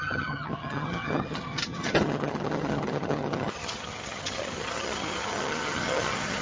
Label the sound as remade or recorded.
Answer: remade